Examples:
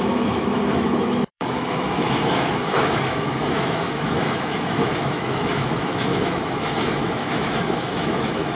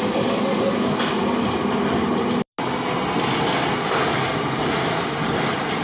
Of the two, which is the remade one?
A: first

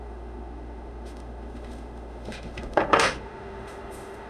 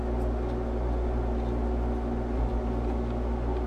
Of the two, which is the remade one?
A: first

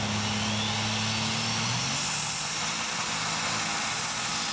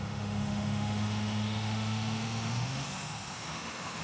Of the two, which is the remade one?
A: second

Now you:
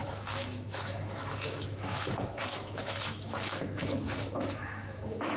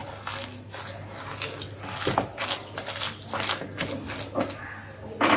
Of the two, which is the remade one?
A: first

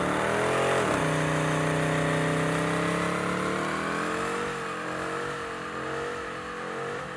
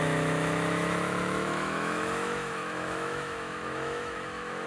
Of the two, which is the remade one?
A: second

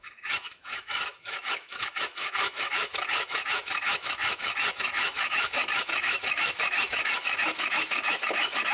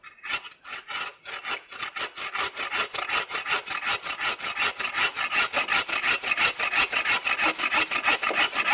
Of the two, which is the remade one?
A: first